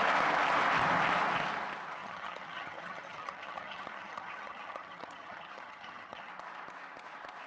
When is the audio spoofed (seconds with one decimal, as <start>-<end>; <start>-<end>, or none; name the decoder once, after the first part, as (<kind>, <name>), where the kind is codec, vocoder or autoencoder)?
2.0-6.3 (vocoder, HiFi-GAN)